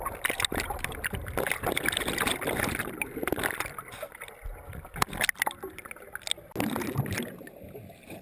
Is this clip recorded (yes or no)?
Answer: yes